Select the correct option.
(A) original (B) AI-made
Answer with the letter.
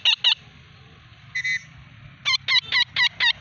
A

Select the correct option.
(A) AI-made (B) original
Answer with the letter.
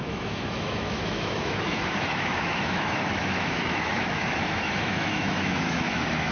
A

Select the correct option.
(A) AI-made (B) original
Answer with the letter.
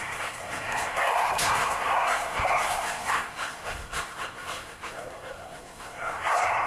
A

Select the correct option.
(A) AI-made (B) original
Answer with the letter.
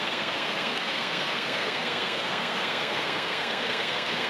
A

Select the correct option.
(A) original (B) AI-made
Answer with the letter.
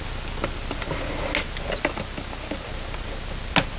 A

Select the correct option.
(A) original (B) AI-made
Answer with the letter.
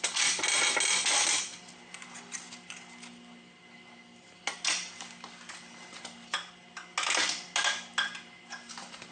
A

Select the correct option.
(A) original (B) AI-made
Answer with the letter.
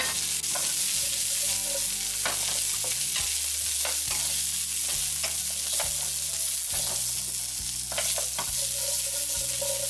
A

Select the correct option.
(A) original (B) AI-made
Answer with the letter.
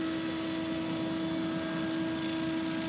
A